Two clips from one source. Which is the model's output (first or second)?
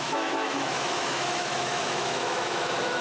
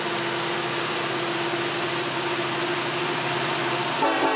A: first